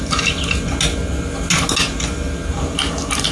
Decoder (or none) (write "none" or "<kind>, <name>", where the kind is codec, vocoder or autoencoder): none